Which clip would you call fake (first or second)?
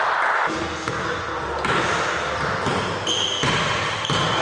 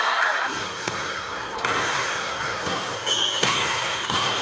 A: second